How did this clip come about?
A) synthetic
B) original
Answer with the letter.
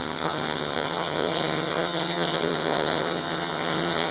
A